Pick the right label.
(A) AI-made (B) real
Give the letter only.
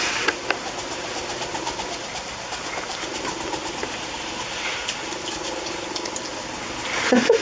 B